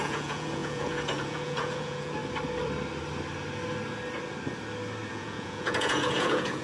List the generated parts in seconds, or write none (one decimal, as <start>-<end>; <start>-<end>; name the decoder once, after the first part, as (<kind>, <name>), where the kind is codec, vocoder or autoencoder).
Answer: 0.0-2.2 (vocoder, Vocos); 5.1-6.6